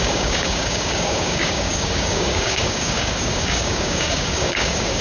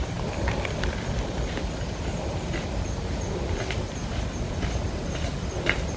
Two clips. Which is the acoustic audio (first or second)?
second